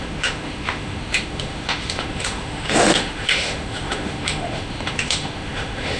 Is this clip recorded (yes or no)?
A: no